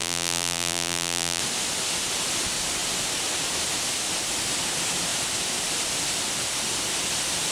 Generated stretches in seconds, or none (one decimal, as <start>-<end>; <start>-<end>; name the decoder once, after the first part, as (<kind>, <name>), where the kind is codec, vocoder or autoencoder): 0.0-1.4 (vocoder, BigVGAN v2)